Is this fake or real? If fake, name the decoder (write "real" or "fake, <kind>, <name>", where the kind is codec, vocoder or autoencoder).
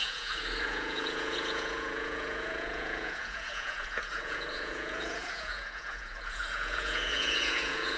fake, vocoder, Vocos